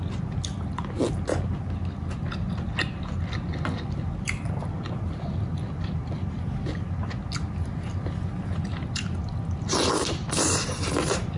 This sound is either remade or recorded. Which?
remade